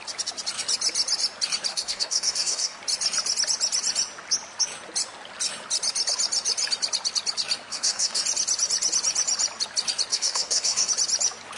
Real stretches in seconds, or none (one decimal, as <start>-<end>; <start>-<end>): 0.0-1.7; 2.8-7.7; 8.2-10.1; 10.9-11.6